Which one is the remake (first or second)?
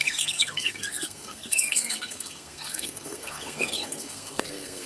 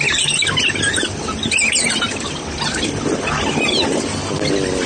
first